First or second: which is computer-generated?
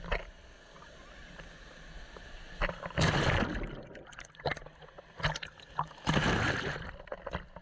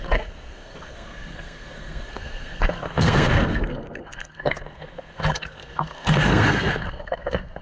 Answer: second